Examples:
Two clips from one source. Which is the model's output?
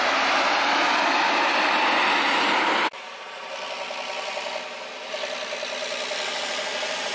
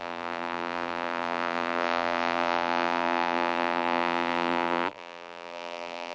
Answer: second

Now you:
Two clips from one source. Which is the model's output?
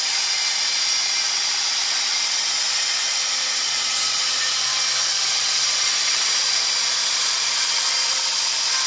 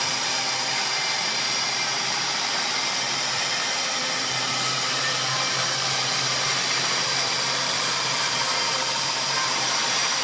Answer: second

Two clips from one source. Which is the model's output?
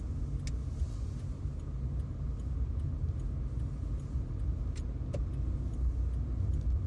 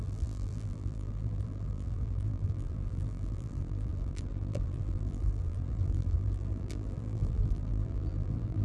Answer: second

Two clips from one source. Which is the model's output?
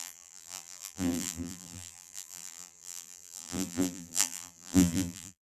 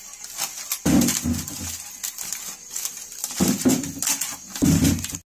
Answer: first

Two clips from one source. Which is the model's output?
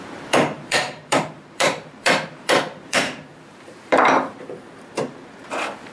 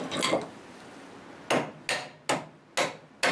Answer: first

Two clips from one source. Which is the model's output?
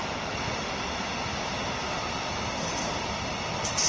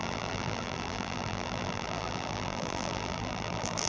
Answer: second